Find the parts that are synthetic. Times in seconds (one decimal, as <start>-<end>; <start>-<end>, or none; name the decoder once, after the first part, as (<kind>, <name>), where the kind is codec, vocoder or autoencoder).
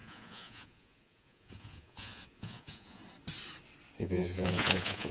0.0-3.0 (vocoder, Vocos); 4.0-5.1